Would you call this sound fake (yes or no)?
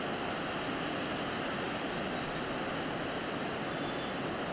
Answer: no